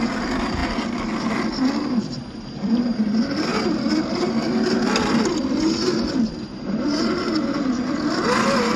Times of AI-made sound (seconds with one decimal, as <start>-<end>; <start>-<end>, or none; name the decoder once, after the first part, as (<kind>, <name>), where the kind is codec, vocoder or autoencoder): none